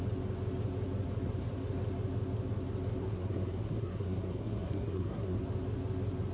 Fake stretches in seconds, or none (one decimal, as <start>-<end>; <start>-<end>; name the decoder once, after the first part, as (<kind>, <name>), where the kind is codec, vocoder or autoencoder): 3.0-5.4 (codec, SNAC)